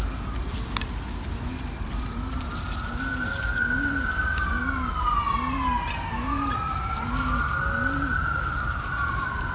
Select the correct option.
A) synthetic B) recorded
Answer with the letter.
B